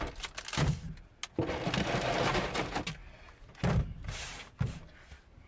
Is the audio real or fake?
real